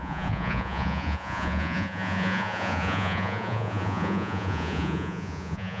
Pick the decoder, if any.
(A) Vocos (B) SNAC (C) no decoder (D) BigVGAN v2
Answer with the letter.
A